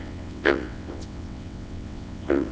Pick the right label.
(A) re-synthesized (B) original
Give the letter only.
A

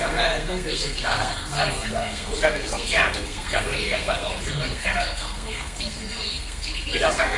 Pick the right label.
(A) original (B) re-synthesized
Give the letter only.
B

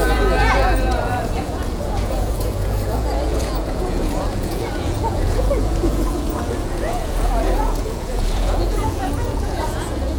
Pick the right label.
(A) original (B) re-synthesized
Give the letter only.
B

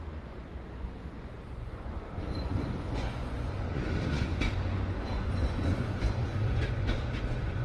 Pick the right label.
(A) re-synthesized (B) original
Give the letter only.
A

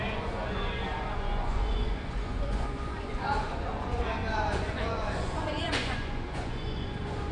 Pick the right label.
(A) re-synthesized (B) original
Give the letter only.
A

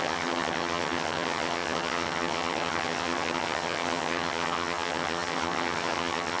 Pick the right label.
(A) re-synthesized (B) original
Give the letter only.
A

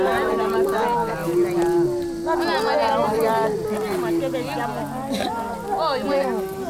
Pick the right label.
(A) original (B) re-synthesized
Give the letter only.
A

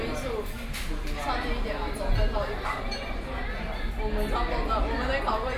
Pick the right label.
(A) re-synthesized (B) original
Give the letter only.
B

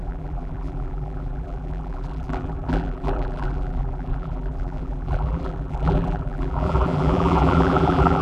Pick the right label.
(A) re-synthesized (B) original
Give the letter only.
A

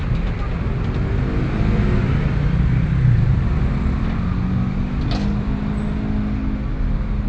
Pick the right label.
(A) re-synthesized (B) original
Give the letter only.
B